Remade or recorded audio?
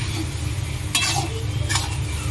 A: recorded